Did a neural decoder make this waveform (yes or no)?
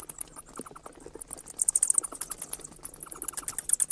no